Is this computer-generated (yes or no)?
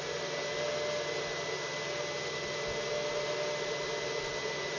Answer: no